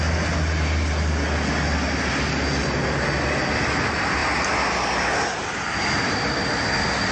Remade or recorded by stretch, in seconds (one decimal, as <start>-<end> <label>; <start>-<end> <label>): 0.0-7.1 recorded